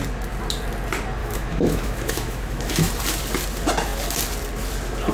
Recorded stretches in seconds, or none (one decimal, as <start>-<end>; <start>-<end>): 0.0-1.2; 2.9-5.1